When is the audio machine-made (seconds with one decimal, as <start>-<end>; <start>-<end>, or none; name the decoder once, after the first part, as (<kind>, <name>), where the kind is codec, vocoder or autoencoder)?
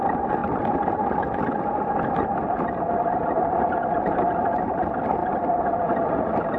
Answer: none